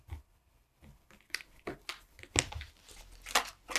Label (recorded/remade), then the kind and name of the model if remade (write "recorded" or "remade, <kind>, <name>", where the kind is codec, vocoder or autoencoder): recorded